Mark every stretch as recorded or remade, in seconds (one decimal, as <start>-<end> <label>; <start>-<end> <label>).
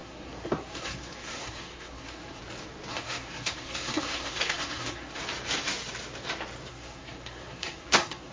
0.0-2.4 remade; 2.4-2.9 recorded; 2.9-5.2 remade; 5.2-6.7 recorded; 6.7-8.3 remade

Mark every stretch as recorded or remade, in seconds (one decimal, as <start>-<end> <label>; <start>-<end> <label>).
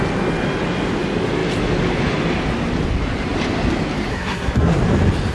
0.0-4.1 recorded; 4.1-4.8 remade; 4.8-5.3 recorded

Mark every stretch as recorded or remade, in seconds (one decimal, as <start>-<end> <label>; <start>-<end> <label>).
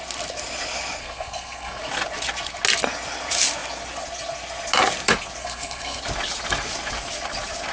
0.0-1.0 recorded; 1.0-1.8 remade; 1.8-5.4 recorded; 5.4-6.0 remade; 6.0-7.7 recorded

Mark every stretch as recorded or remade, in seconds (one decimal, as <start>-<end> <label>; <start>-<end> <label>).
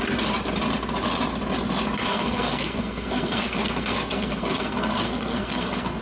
0.0-2.1 recorded; 2.1-6.0 remade